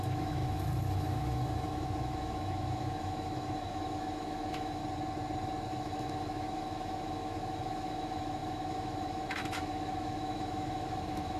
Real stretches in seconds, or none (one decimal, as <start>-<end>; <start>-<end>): 4.8-5.7